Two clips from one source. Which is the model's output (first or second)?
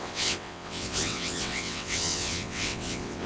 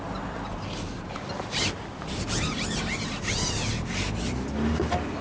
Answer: first